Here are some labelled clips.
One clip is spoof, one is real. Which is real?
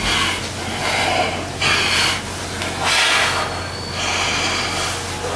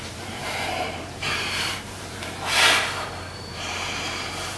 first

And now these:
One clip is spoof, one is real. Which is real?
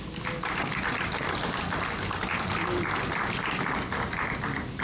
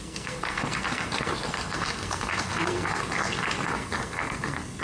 first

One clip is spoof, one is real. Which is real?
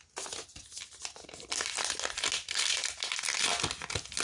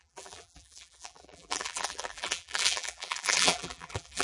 first